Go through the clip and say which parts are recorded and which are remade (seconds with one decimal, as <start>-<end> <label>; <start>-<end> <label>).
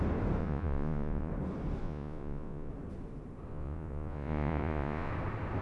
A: 0.0-0.4 recorded; 0.4-1.3 remade; 1.3-1.8 recorded; 1.8-2.7 remade; 2.7-3.5 recorded; 3.5-5.1 remade; 5.1-5.6 recorded